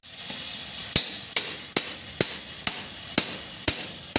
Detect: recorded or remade recorded